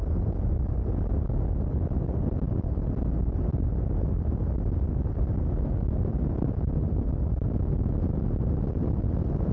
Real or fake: real